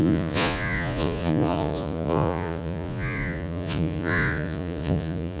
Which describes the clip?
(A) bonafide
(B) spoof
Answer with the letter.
B